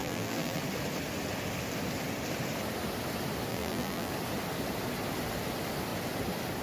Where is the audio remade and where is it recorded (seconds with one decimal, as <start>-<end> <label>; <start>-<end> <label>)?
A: 0.0-0.6 remade; 0.6-3.5 recorded; 3.5-4.1 remade; 4.1-6.6 recorded